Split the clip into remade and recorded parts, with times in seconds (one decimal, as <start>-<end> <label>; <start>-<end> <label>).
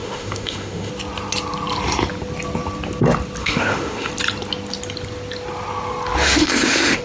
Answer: 0.0-0.9 remade; 0.9-3.4 recorded; 3.4-4.1 remade; 4.1-6.2 recorded; 6.2-7.0 remade